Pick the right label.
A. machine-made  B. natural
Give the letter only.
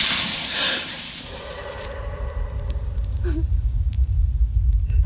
A